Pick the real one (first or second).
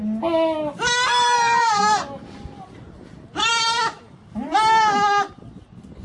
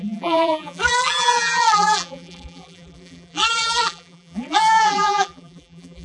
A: first